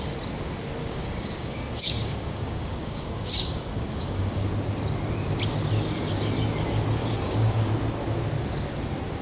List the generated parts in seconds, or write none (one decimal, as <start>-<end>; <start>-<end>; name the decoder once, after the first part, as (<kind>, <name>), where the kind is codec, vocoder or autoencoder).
0.8-4.5 (codec, DAC); 7.0-7.7